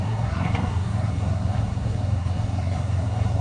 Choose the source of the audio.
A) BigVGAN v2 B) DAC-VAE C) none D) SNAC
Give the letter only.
D